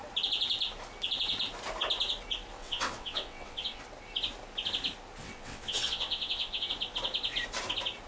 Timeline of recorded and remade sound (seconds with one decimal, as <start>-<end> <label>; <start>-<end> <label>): 0.0-2.6 recorded; 2.6-3.8 remade; 3.8-5.2 recorded; 5.2-6.7 remade; 6.7-8.1 recorded